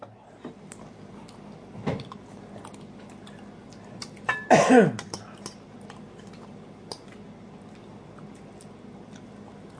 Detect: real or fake real